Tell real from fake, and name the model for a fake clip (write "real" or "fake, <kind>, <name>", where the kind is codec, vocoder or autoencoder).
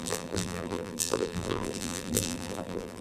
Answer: fake, vocoder, BigVGAN v2